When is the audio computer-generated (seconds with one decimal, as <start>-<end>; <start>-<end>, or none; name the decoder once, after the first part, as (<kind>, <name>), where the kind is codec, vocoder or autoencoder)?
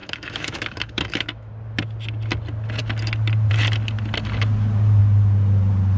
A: 0.0-1.5 (autoencoder, DAC-VAE)